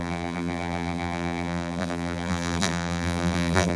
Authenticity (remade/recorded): remade